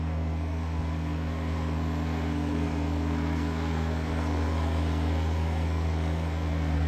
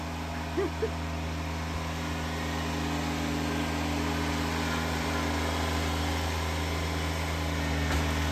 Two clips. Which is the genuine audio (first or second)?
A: second